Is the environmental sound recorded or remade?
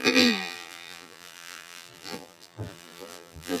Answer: remade